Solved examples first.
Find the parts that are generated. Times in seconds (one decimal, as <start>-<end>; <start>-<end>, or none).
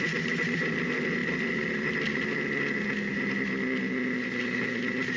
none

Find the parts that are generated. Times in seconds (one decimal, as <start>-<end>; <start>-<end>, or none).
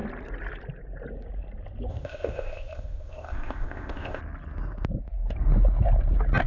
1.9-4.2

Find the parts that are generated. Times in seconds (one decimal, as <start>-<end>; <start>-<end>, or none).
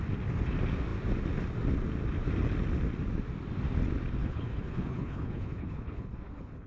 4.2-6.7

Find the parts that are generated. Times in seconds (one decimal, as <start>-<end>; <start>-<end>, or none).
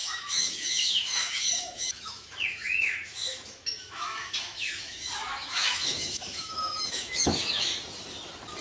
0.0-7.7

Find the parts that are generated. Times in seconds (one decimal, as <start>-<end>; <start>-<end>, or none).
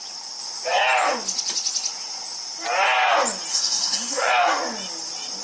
3.5-4.3